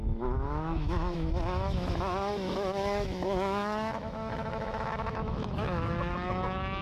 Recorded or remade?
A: remade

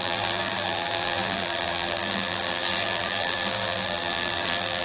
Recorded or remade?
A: remade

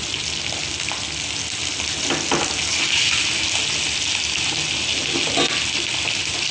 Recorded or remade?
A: recorded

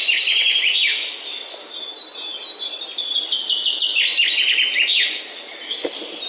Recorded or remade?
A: recorded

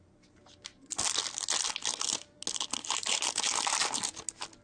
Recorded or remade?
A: recorded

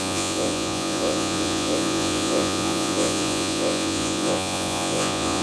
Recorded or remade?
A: remade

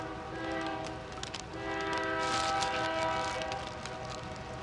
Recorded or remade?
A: recorded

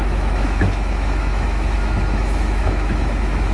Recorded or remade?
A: remade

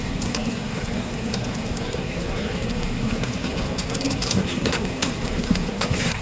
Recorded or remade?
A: remade